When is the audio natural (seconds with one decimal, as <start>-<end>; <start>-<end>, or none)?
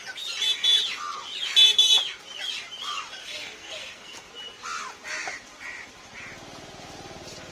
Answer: 0.0-3.2; 4.3-7.5